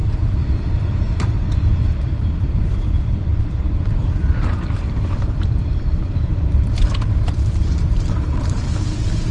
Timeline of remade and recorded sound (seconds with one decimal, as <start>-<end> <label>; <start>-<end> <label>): 0.0-9.3 remade